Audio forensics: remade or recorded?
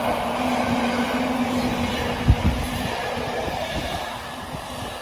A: recorded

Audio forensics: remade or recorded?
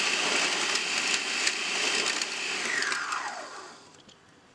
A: recorded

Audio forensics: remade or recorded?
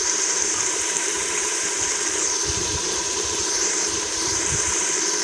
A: remade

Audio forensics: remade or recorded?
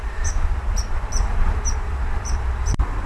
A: remade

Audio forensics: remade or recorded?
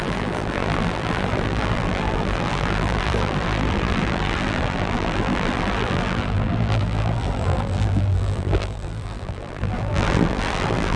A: remade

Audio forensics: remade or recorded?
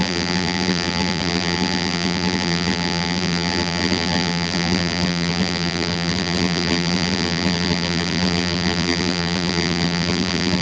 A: remade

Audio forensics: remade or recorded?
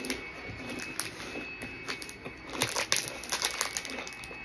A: recorded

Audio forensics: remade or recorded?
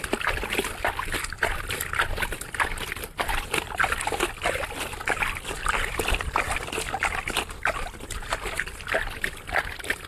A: recorded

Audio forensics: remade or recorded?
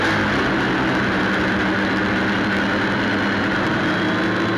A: recorded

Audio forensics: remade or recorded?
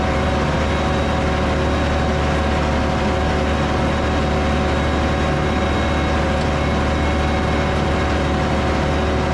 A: recorded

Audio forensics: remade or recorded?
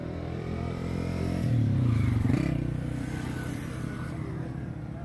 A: remade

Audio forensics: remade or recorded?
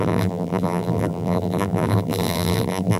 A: remade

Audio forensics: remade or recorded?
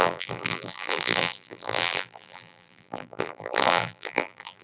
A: remade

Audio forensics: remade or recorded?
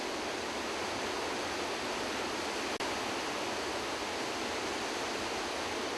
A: recorded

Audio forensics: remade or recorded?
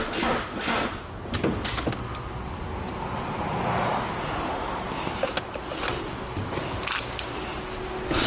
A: recorded